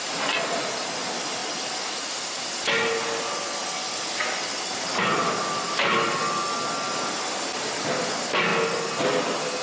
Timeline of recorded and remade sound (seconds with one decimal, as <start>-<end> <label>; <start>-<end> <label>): 0.0-9.6 recorded